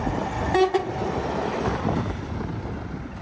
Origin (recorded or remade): recorded